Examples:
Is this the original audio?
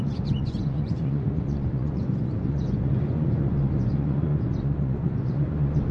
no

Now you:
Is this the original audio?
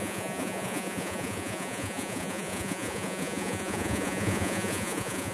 no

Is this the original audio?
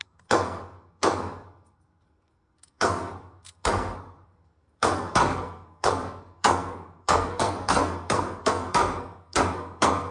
no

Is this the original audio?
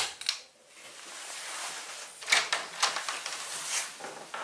yes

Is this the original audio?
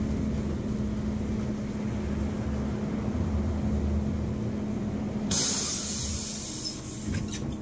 yes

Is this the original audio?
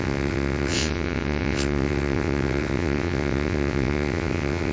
no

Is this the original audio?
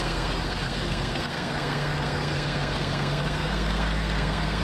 no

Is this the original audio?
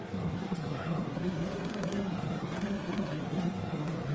no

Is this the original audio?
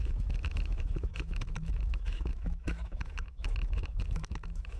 no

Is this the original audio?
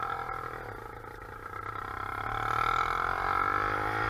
yes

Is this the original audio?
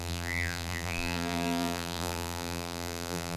no